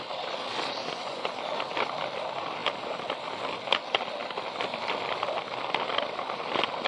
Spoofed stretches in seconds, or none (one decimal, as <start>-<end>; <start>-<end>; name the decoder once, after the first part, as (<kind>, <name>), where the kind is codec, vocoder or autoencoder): 0.8-1.4 (vocoder, Vocos)